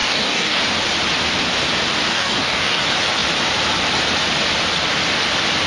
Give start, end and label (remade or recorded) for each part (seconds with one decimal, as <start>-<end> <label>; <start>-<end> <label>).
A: 0.0-0.6 remade; 0.6-2.1 recorded; 2.1-2.8 remade; 2.8-5.7 recorded

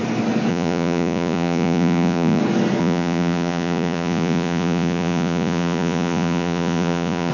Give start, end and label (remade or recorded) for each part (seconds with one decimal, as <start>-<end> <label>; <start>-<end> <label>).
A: 0.0-0.5 recorded; 0.5-2.4 remade; 2.4-2.8 recorded; 2.8-7.3 remade